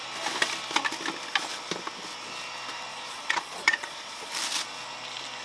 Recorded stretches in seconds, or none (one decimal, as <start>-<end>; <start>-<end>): 0.0-2.9; 4.3-5.4